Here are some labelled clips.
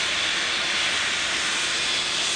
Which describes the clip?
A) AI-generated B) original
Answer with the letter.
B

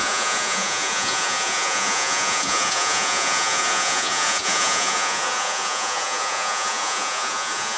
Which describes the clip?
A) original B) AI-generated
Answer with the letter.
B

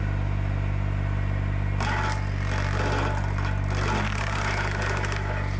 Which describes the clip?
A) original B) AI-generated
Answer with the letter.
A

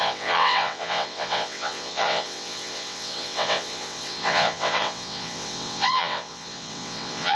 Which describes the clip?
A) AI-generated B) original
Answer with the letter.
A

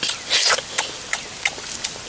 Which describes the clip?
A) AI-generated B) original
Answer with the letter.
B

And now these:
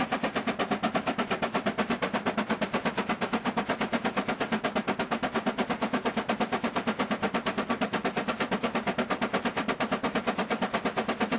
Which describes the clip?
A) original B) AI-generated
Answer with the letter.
A